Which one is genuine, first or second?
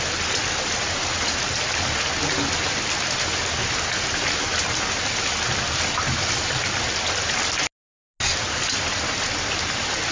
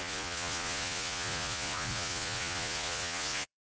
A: first